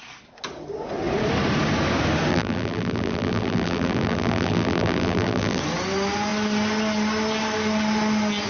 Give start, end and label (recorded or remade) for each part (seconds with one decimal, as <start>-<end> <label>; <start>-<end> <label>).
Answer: 0.0-2.3 recorded; 2.3-5.6 remade; 5.6-8.5 recorded